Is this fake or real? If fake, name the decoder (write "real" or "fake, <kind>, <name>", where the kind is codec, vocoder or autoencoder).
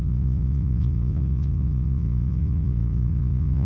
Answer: fake, vocoder, Vocos